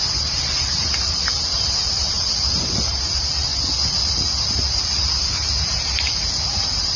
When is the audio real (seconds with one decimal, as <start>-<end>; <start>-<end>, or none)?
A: 3.5-4.1